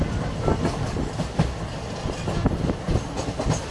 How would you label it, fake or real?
real